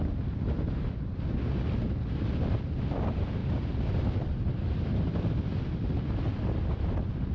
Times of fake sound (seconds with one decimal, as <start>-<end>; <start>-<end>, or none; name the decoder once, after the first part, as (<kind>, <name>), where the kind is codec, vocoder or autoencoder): 3.4-5.6 (vocoder, BigVGAN v2)